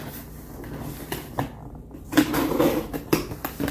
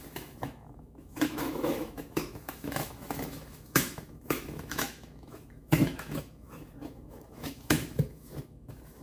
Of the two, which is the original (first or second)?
first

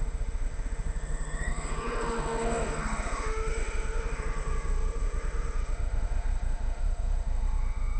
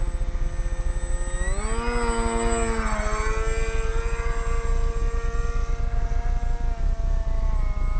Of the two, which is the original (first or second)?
second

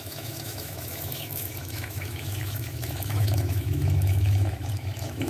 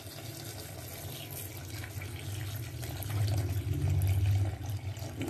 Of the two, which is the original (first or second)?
second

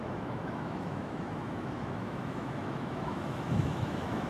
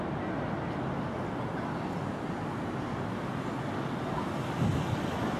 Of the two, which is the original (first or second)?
second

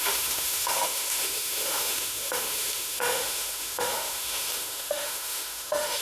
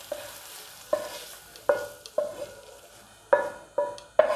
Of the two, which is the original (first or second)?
second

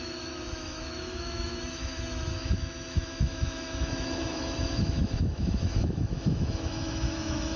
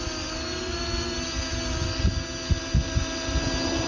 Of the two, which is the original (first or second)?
second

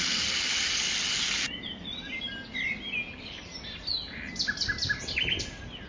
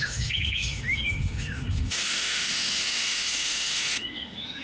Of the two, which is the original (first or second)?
first